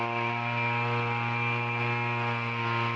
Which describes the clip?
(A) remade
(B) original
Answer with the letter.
B